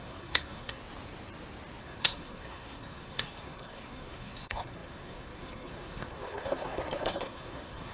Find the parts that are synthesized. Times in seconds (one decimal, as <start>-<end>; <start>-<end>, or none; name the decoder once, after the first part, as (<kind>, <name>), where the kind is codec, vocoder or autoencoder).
0.0-0.8 (codec, SNAC); 1.8-7.9